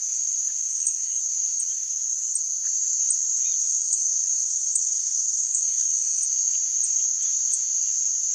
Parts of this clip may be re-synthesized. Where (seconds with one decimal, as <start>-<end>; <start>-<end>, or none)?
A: 0.7-1.2; 3.6-6.2